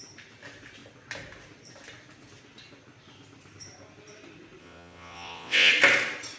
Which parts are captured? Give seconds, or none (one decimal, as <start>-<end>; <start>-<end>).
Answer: 0.0-4.6; 5.7-6.4